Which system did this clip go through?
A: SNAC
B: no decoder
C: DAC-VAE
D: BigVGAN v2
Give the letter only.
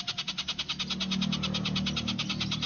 B